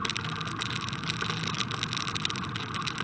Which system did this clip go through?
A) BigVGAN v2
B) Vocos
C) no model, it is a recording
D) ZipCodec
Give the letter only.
C